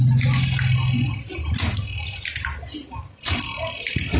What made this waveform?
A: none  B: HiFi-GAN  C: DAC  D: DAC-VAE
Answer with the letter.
A